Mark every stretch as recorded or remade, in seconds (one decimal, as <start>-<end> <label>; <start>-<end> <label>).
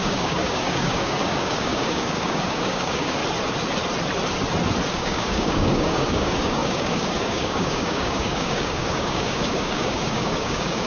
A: 0.0-3.2 remade; 3.2-4.9 recorded; 4.9-10.9 remade